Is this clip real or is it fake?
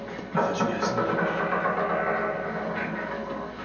real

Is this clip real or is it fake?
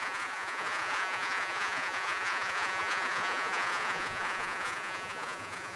fake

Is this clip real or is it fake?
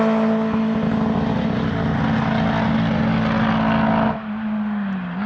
real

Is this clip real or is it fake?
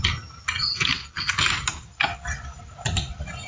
real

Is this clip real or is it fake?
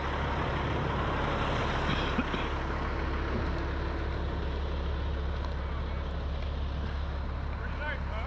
real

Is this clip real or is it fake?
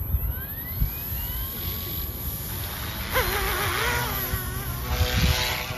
real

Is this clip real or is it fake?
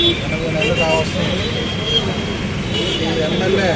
real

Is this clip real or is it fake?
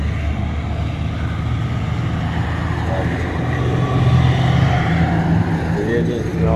real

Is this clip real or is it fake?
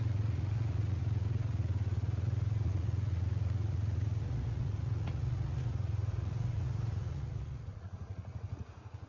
fake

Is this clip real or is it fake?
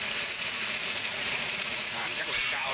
fake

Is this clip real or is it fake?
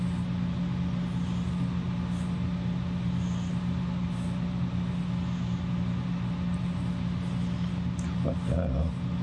real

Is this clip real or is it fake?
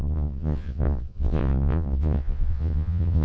fake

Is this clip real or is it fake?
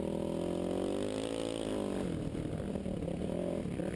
real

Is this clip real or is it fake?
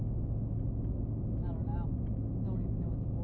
real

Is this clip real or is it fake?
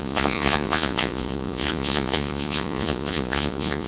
fake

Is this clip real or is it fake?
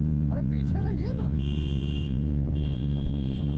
fake